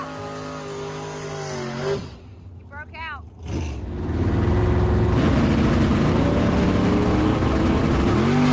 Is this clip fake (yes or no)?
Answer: no